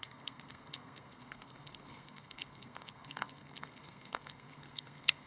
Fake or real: fake